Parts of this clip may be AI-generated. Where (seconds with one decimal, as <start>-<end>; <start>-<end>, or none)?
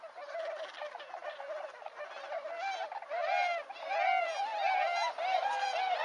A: 3.2-3.8